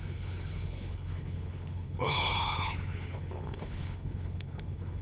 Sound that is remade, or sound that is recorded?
remade